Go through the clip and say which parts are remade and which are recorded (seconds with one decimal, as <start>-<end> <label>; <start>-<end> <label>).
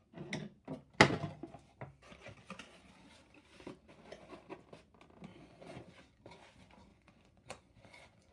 0.0-5.3 recorded; 5.3-6.2 remade; 6.2-6.9 recorded; 6.9-8.3 remade